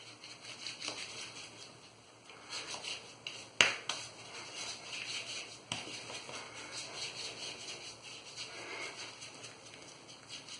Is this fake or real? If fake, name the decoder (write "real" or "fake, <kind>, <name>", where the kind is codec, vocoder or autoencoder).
real